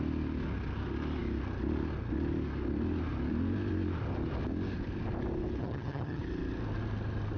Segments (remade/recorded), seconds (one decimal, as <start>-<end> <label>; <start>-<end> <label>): 0.0-5.6 recorded; 5.6-6.2 remade; 6.2-7.4 recorded